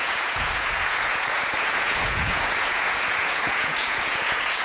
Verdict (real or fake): fake